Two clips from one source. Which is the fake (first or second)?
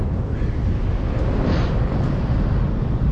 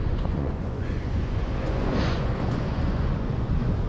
second